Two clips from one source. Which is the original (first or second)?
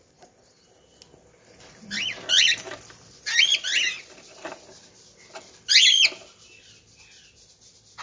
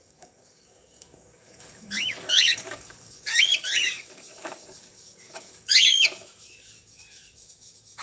first